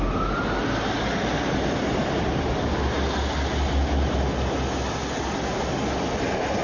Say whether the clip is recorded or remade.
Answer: recorded